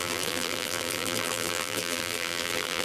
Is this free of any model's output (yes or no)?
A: no